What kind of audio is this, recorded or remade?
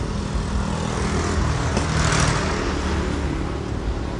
recorded